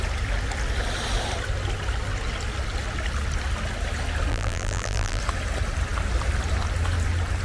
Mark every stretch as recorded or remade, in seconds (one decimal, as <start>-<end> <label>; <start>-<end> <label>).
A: 0.0-4.3 recorded; 4.3-5.2 remade; 5.2-7.4 recorded